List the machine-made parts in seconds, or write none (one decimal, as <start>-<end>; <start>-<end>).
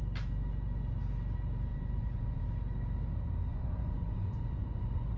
1.7-2.4; 3.5-5.2